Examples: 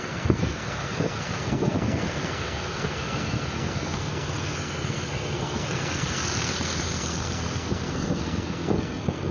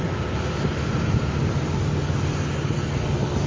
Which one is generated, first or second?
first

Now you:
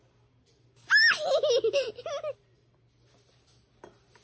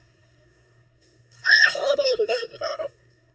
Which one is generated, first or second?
second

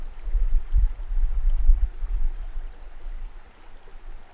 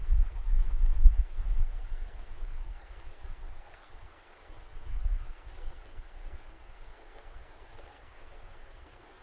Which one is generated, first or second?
second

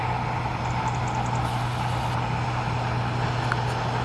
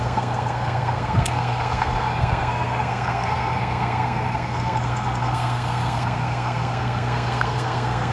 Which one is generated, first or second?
second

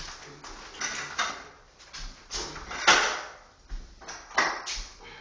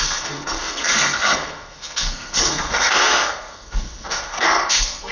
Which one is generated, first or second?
second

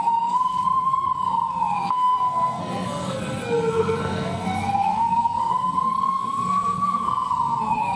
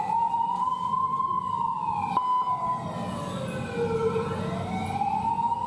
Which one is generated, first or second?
first